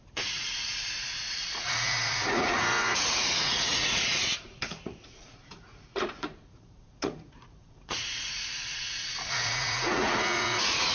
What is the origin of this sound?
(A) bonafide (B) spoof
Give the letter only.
B